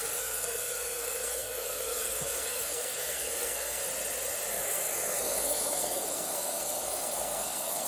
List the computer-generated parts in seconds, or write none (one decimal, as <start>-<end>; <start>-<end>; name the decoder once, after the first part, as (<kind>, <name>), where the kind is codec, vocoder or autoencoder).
0.0-3.8 (codec, SNAC); 4.5-7.9